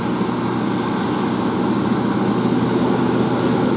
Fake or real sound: real